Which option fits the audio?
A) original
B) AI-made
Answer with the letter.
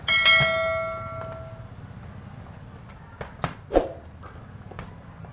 A